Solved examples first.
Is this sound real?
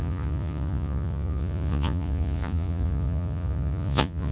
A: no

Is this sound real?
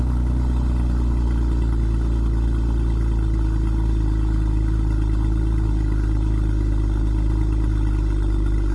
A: yes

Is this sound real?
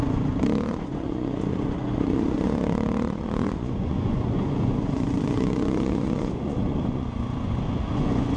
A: no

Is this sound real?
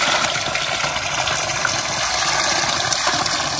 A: yes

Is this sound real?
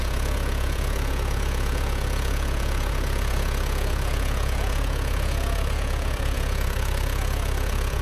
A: no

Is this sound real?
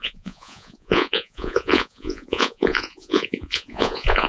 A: no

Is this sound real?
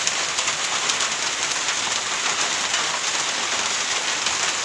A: yes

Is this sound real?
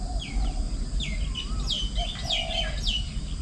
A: yes